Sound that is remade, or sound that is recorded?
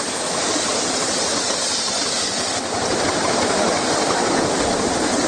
recorded